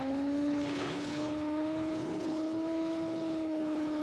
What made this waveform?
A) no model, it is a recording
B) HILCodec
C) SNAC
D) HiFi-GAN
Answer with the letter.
B